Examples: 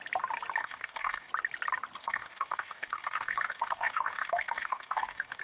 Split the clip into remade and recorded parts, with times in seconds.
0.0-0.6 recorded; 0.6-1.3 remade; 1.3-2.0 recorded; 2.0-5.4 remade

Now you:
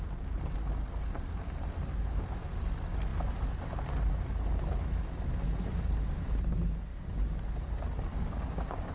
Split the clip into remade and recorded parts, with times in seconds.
0.0-6.9 recorded; 6.9-7.4 remade; 7.4-8.1 recorded; 8.1-8.9 remade

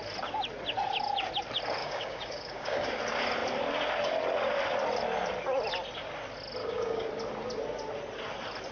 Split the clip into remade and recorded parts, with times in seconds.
0.0-1.8 recorded; 1.8-3.0 remade; 3.0-6.6 recorded; 6.6-7.1 remade; 7.1-8.7 recorded